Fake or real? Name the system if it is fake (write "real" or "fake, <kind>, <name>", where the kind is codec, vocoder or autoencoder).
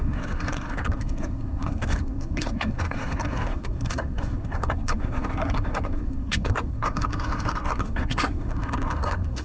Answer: fake, codec, SNAC